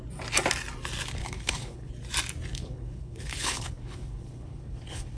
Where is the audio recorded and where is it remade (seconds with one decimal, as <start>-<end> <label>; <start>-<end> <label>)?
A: 0.0-1.2 recorded; 1.2-1.9 remade; 1.9-2.5 recorded; 2.5-5.2 remade